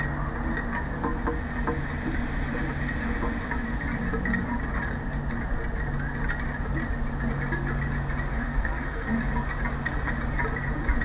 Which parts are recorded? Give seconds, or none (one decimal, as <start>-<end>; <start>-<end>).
0.0-8.3; 9.2-11.0